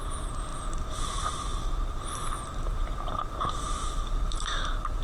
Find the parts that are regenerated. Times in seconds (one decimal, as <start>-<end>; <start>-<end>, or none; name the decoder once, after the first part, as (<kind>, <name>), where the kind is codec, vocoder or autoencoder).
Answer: 0.0-5.0 (vocoder, BigVGAN v2)